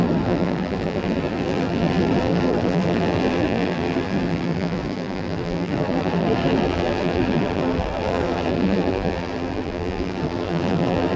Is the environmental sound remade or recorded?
remade